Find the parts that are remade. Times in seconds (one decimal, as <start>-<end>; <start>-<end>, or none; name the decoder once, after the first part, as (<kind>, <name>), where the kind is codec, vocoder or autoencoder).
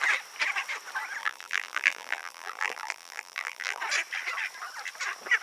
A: 1.2-3.8 (vocoder, BigVGAN v2)